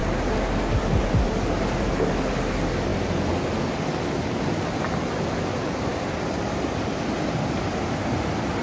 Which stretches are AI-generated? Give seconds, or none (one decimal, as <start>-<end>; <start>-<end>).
none